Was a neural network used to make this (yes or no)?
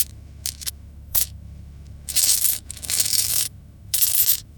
yes